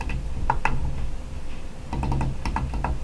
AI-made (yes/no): no